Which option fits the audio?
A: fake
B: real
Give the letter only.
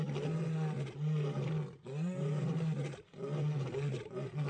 B